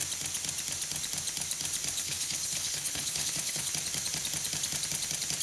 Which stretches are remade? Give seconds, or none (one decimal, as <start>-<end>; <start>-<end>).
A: 2.0-3.7